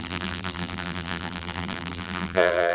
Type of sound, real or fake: fake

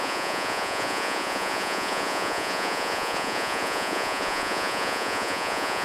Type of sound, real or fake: fake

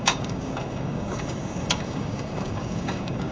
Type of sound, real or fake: fake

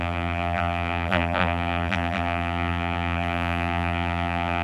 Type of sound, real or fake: fake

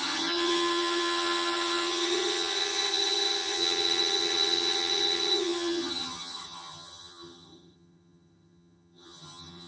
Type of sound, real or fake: fake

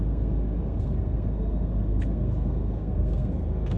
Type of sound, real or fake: fake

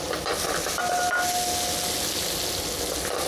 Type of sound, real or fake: real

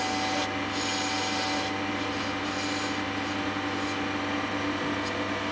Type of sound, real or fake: real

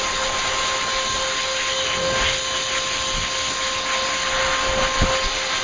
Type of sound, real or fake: real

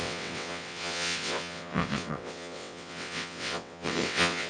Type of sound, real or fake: fake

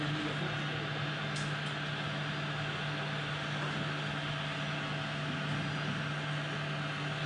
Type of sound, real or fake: real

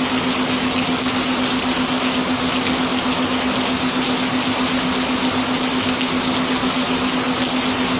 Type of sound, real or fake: real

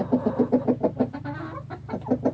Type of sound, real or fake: real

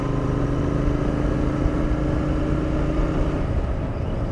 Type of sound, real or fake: real